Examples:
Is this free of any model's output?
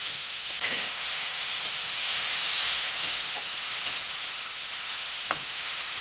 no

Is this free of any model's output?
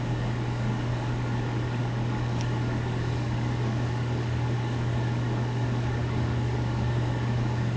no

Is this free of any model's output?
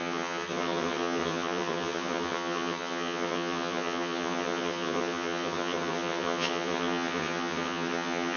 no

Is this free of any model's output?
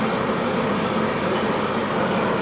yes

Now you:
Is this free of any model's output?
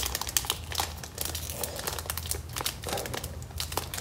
yes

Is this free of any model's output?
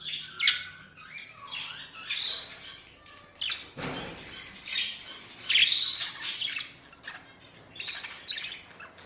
yes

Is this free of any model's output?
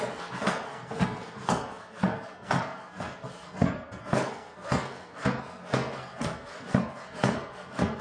no